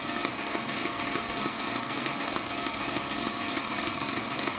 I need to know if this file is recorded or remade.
remade